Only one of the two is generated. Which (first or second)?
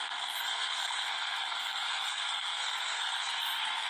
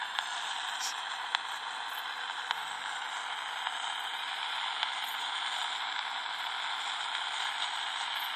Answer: first